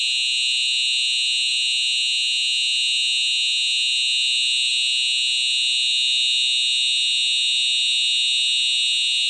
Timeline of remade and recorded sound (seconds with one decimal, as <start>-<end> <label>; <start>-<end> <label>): 0.0-9.3 recorded